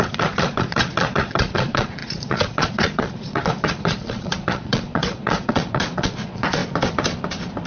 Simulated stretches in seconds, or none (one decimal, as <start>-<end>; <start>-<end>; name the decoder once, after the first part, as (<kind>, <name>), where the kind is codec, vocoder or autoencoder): 0.0-6.6 (vocoder, Vocos)